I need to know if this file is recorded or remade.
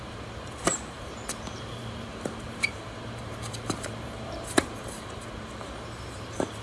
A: remade